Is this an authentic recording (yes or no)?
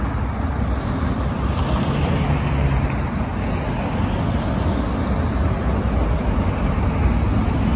yes